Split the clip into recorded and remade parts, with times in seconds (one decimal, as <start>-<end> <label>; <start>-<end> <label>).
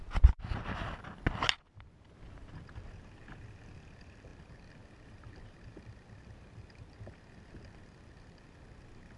0.0-9.2 recorded